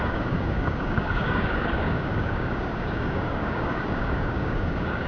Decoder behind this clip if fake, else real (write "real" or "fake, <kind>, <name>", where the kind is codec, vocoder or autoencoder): fake, codec, DAC